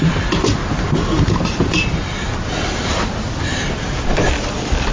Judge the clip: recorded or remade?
recorded